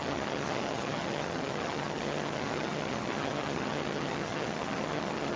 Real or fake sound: fake